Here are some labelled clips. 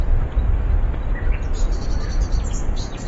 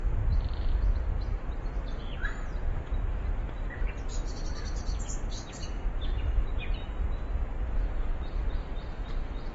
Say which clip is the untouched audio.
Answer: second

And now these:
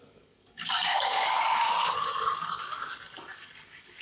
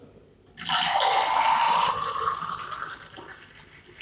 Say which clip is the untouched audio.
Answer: second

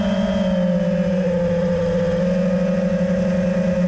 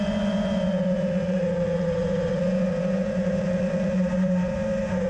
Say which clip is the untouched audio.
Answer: first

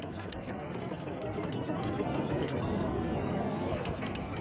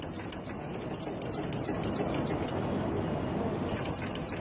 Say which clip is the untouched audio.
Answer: second